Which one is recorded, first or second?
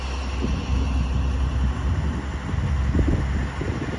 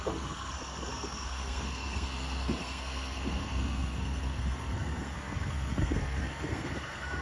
first